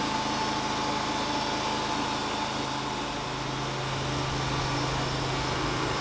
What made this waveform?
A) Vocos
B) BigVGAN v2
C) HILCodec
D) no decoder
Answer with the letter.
D